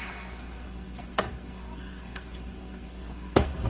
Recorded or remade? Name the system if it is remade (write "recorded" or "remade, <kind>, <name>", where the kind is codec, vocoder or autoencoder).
remade, codec, SNAC